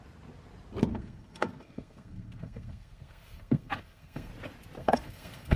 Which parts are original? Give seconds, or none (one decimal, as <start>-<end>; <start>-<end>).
0.0-0.9; 4.3-4.8